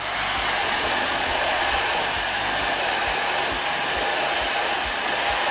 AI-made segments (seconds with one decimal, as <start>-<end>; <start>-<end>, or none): 0.6-2.0